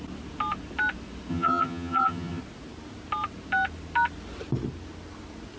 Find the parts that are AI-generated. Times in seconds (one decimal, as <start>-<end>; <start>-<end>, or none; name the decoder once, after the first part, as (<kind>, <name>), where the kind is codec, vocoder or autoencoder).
1.3-2.4 (vocoder, HiFi-GAN)